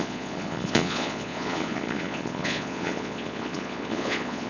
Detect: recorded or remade remade